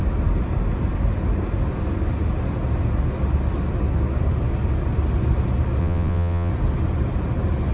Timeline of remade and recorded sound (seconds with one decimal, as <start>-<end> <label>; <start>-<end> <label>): 0.0-5.8 recorded; 5.8-6.5 remade; 6.5-7.7 recorded